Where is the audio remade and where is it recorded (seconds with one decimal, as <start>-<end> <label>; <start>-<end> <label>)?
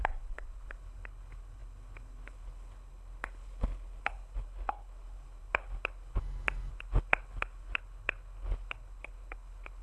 0.0-6.2 remade; 6.2-6.7 recorded; 6.7-9.8 remade